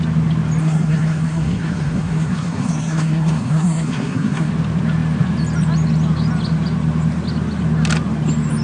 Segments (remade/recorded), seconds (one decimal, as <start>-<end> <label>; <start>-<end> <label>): 0.0-0.6 recorded; 0.6-4.5 remade; 4.5-8.6 recorded